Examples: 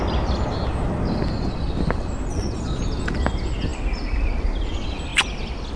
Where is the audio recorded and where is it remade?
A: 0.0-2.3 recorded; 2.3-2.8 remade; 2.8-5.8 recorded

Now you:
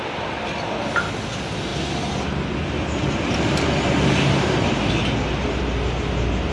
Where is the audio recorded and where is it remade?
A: 0.0-6.5 recorded

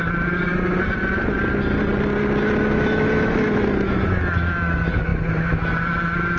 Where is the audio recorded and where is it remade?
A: 0.0-0.5 remade; 0.5-2.6 recorded; 2.6-6.4 remade

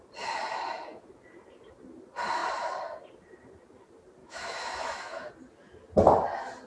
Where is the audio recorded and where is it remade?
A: 0.0-4.2 recorded; 4.2-5.3 remade; 5.3-6.7 recorded

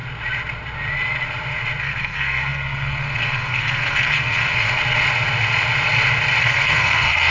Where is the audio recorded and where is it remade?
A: 0.0-1.8 recorded; 1.8-4.8 remade; 4.8-6.4 recorded; 6.4-7.3 remade

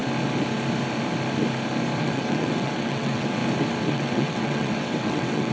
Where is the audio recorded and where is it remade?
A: 0.0-2.0 recorded; 2.0-3.4 remade; 3.4-3.9 recorded; 3.9-5.5 remade

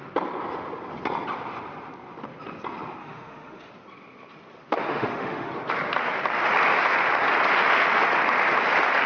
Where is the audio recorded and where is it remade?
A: 0.0-3.0 recorded; 3.0-3.7 remade; 3.7-4.9 recorded; 4.9-5.5 remade; 5.5-9.1 recorded